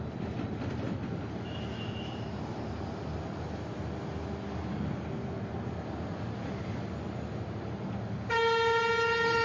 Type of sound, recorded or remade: recorded